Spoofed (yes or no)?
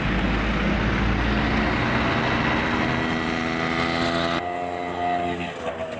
no